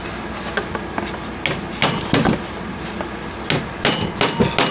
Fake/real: real